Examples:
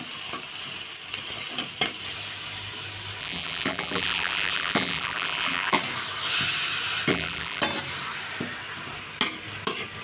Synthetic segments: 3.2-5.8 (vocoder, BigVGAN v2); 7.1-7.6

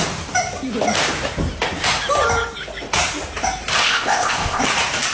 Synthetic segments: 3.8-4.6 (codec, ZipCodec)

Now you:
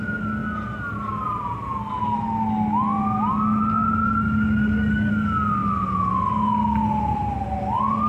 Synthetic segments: 4.0-5.1 (codec, DAC)

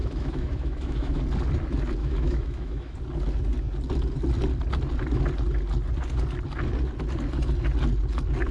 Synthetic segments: 0.0-1.2 (autoencoder, DAC-VAE); 2.0-2.9

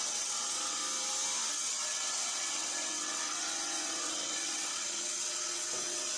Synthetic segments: 0.0-0.8 (vocoder, WaveNeXt); 1.5-6.2

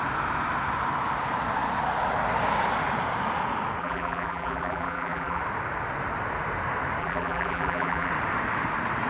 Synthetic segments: 3.8-5.4 (vocoder, BigVGAN v2); 7.0-8.1

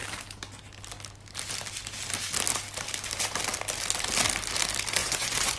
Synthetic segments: 5.0-5.6 (vocoder, Vocos)

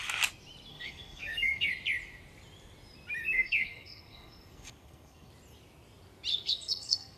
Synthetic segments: 0.7-1.7 (codec, SNAC); 3.2-5.3; 6.3-7.2